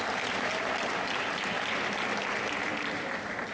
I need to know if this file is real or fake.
real